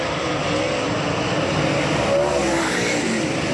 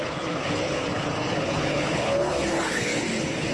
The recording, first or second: first